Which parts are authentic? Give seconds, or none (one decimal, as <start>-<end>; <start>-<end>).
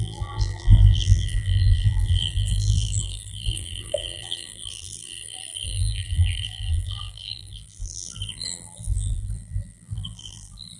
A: none